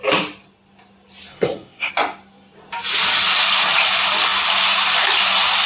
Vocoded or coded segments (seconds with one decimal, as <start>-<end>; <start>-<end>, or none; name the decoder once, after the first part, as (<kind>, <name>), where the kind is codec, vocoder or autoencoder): 1.3-1.9 (codec, SNAC)